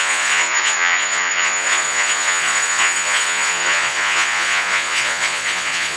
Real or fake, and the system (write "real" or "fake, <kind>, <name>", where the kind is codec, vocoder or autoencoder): fake, vocoder, Vocos